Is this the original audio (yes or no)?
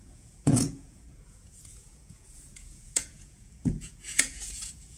no